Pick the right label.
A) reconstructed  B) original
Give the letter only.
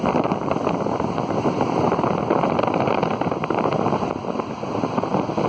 B